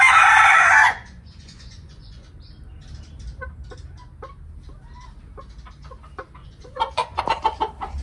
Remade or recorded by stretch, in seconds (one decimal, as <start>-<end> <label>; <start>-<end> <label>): 0.0-0.5 recorded; 0.5-2.3 remade; 2.3-6.4 recorded; 6.4-7.2 remade; 7.2-8.0 recorded